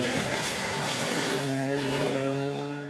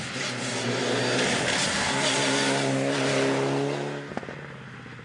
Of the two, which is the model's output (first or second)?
first